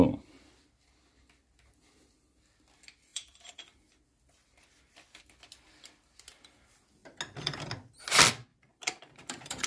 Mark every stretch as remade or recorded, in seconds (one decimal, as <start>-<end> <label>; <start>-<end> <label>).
0.0-3.1 recorded; 3.1-3.6 remade; 3.6-8.5 recorded; 8.5-9.7 remade